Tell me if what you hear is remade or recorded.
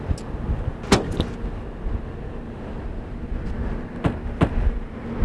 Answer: recorded